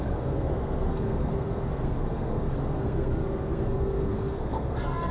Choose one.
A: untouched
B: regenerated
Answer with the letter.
B